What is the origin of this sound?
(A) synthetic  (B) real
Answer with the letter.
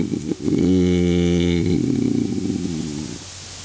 B